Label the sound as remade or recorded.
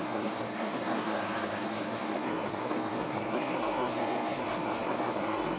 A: remade